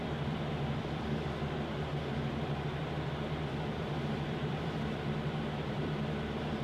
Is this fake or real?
fake